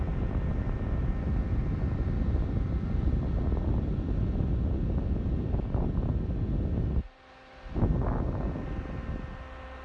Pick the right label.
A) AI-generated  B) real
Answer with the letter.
B